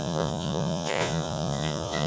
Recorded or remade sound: remade